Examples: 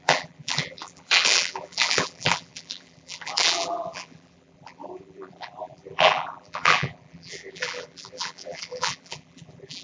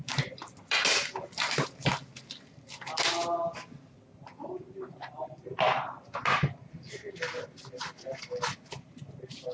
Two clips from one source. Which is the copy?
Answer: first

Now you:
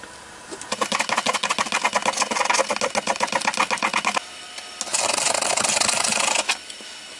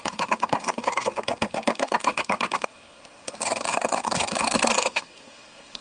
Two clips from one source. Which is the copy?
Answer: second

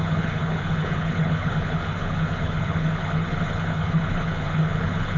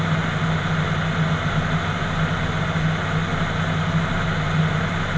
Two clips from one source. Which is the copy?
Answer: first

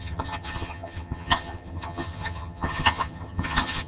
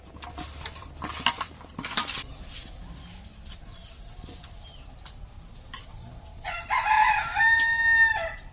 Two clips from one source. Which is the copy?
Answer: first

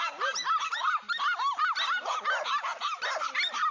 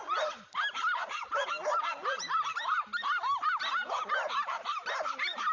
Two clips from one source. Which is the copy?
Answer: second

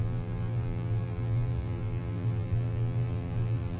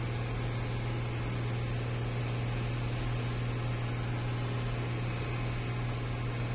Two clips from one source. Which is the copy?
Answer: first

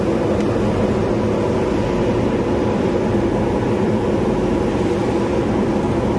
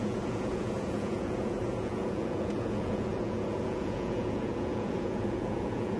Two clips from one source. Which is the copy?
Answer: second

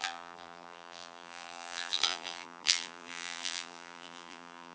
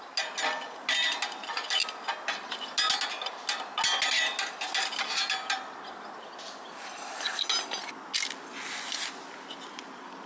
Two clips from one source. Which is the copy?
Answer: first